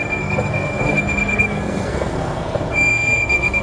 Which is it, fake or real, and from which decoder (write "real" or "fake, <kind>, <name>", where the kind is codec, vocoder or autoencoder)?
fake, codec, SNAC